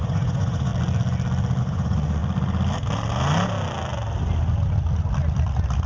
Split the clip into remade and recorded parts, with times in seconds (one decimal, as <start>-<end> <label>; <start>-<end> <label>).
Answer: 0.0-0.7 remade; 0.7-1.6 recorded; 1.6-2.2 remade; 2.2-5.9 recorded